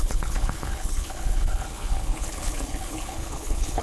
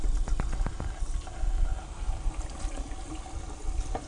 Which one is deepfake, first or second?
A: first